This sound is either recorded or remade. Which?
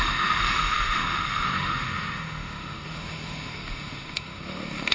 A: remade